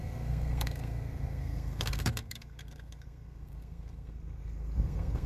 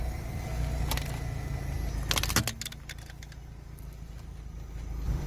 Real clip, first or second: second